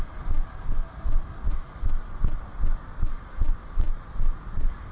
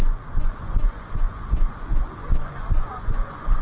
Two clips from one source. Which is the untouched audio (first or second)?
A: first